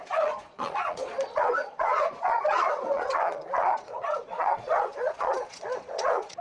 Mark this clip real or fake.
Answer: fake